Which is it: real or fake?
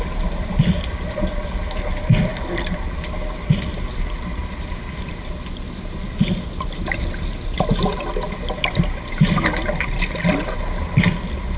real